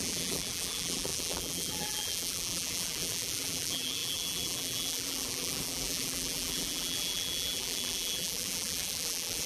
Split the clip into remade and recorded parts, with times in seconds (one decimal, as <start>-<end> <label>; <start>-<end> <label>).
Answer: 0.0-9.5 remade